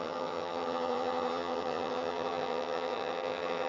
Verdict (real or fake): fake